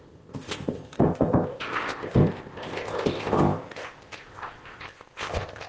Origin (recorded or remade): remade